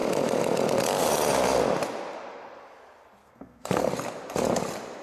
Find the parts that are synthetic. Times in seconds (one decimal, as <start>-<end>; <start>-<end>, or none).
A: 3.2-3.9